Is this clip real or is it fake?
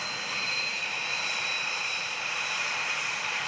fake